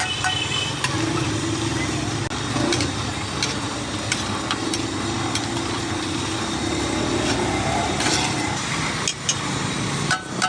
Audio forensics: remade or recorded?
recorded